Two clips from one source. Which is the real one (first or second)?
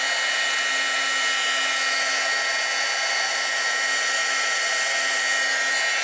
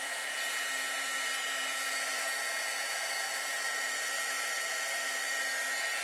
first